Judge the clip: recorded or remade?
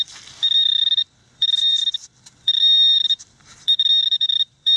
remade